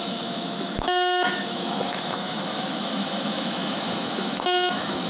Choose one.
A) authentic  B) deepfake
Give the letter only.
B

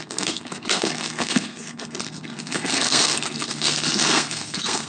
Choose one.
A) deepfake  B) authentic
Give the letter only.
A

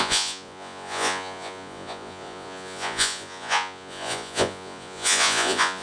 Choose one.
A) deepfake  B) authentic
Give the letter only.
A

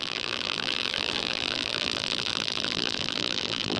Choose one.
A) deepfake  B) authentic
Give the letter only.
A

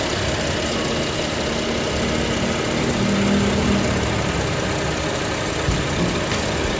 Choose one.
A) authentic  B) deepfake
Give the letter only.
A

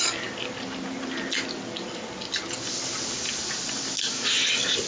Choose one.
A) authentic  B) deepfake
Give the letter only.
A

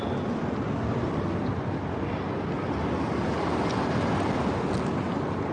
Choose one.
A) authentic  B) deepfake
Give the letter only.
A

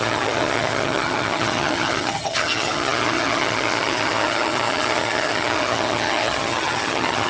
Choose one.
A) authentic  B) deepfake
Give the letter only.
B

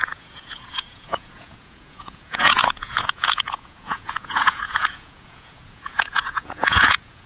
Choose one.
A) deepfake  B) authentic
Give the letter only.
A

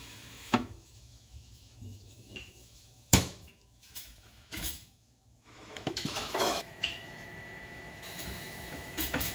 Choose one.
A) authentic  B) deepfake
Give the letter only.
B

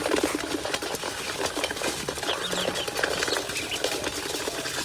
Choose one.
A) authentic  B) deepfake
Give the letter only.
A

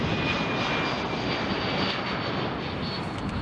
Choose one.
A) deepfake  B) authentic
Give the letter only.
B